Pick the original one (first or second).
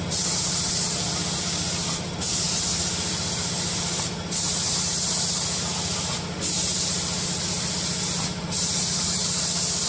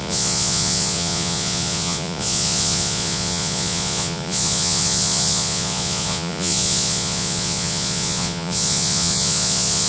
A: first